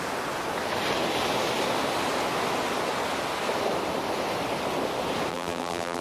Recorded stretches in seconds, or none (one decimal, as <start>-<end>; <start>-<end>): 0.0-5.3